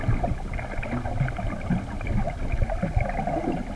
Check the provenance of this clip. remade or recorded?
recorded